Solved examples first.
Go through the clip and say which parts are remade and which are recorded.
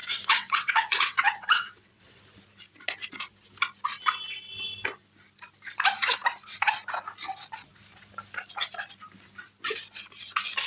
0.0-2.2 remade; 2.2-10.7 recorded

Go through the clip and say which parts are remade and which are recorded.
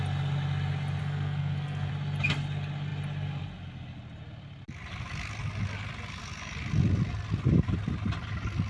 0.0-1.0 recorded; 1.0-1.9 remade; 1.9-8.7 recorded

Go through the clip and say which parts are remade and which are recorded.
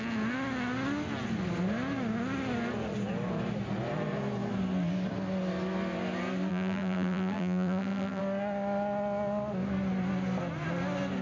0.0-6.5 recorded; 6.5-8.2 remade; 8.2-11.2 recorded